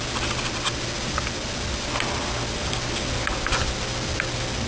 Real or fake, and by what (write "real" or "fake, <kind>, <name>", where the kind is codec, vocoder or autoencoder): real